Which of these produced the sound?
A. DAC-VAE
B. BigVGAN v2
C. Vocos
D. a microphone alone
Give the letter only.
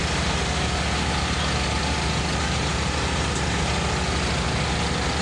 D